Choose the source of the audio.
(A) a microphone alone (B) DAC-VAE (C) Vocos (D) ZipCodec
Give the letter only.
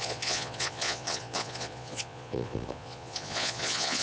C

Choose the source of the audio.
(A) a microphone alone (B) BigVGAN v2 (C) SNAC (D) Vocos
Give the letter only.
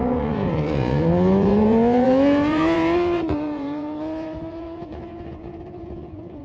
D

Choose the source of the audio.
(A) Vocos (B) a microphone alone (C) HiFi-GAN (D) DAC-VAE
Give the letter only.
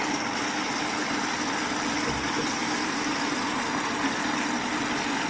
B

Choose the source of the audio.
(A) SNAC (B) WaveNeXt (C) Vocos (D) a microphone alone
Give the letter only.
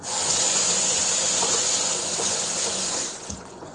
C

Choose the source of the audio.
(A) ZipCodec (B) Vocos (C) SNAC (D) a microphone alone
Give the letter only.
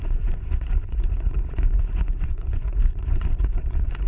B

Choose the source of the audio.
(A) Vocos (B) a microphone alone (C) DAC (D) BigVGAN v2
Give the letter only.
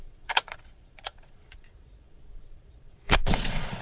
A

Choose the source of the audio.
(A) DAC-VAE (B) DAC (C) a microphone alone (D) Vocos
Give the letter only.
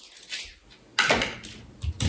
C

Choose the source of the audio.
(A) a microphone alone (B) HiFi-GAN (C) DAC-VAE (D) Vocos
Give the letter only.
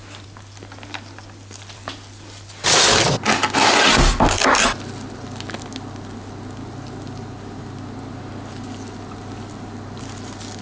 A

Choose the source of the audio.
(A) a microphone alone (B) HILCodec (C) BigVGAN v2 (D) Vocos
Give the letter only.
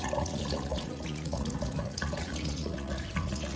D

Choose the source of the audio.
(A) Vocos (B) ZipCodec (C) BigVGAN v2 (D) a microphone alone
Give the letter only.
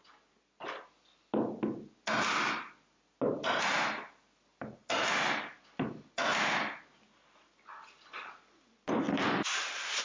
D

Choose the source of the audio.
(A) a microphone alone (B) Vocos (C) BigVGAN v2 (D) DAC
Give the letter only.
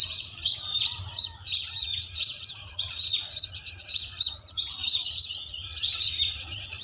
B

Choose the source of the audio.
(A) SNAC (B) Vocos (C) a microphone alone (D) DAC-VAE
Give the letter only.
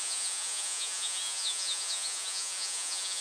B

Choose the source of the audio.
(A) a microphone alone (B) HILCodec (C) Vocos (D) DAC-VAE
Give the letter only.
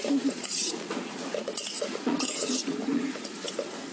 C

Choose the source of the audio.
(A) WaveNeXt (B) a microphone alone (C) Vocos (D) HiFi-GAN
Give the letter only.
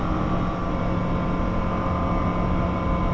B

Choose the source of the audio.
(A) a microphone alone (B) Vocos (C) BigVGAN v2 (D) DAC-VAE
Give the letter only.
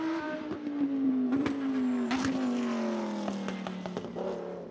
A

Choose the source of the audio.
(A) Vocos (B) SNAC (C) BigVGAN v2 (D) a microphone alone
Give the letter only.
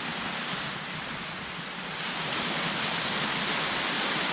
D